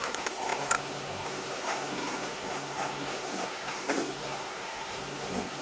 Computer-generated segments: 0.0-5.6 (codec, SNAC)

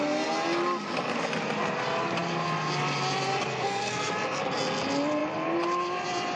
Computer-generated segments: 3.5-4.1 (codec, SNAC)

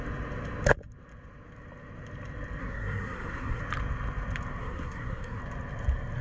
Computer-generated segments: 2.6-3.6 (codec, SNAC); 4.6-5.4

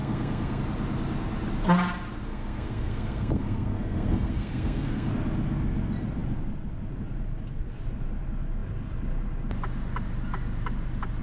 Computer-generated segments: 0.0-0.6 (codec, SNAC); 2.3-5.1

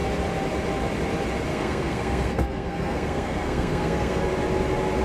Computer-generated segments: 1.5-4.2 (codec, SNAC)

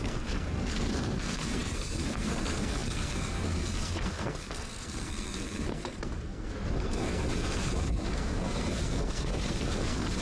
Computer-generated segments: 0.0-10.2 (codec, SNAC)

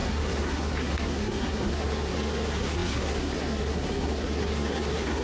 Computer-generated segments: 0.0-5.2 (codec, SNAC)